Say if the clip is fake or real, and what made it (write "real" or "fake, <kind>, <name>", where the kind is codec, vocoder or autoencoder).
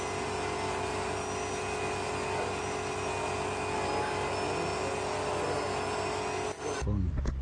real